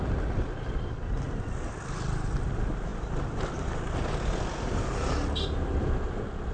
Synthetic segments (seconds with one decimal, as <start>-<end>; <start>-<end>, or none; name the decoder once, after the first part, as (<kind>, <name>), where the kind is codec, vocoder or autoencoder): none